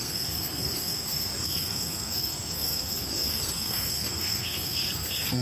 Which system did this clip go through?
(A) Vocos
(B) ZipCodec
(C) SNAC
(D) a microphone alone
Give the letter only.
C